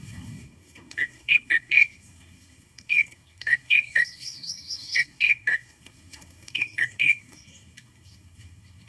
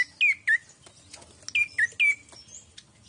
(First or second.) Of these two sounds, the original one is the second